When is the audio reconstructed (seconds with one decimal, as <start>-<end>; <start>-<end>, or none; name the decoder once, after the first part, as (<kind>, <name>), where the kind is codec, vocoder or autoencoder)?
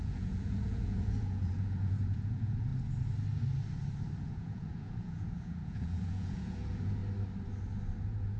0.0-2.7 (vocoder, Vocos); 4.2-7.0; 8.0-8.4